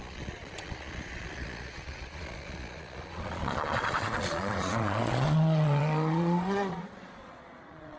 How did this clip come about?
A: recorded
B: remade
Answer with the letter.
B